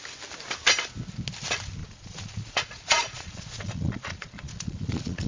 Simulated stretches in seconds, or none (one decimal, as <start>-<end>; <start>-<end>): 1.8-5.3